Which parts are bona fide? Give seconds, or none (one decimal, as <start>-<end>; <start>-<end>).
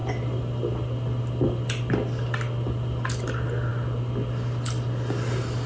0.0-5.7